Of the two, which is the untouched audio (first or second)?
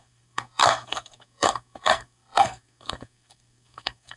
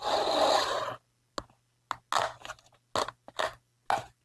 second